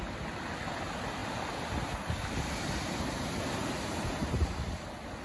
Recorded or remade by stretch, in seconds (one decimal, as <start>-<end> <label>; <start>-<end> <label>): 0.0-5.2 recorded